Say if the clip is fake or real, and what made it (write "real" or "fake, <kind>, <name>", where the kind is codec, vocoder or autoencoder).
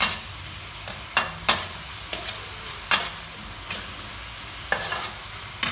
real